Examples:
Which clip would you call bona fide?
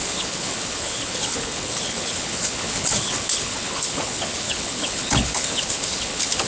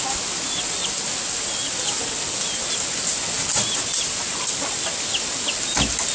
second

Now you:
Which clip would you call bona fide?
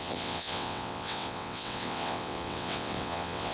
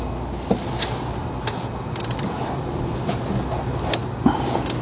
second